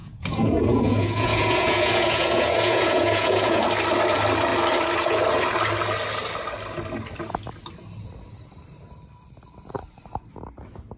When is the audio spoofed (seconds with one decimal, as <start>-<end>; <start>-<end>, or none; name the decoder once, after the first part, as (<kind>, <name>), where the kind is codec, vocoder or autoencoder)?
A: 0.0-3.6 (vocoder, Vocos)